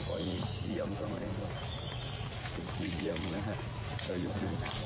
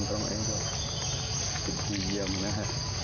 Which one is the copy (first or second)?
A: first